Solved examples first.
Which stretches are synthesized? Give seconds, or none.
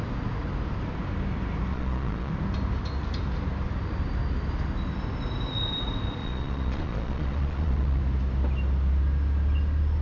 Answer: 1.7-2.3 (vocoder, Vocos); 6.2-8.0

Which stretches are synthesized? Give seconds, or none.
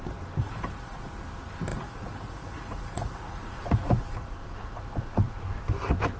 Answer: 0.4-1.1 (vocoder, Vocos); 1.7-5.4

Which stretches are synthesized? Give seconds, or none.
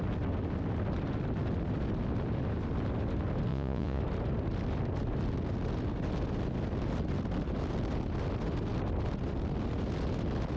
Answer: 3.5-4.0 (vocoder, Vocos)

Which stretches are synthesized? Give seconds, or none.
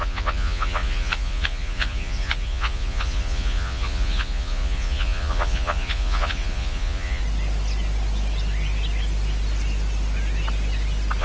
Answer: 0.0-7.2 (vocoder, Vocos)